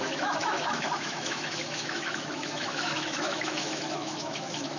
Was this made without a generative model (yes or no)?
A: no